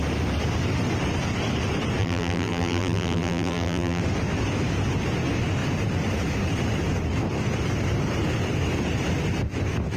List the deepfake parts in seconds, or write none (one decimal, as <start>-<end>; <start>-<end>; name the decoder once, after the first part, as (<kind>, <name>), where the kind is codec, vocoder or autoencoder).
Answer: 2.0-4.0 (vocoder, BigVGAN v2)

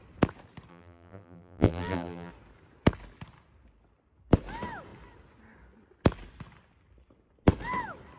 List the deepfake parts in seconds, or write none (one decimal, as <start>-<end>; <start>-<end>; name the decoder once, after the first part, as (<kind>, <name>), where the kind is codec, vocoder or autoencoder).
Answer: 0.7-2.3 (vocoder, BigVGAN v2)

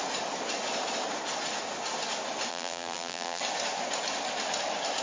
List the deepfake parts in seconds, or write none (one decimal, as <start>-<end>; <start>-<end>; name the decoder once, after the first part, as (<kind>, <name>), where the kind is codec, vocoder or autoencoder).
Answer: 2.5-3.4 (vocoder, BigVGAN v2)

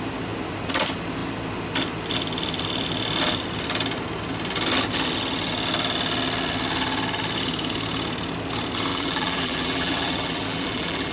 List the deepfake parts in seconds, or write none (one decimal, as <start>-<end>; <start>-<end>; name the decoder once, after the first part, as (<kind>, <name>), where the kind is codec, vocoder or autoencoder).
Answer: 8.9-11.1 (vocoder, BigVGAN v2)